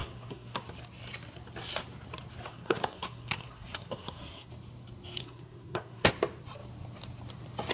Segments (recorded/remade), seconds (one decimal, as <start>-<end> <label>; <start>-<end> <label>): 0.0-0.6 remade; 0.6-2.5 recorded; 2.5-4.5 remade; 4.5-5.2 recorded; 5.2-6.1 remade; 6.1-7.7 recorded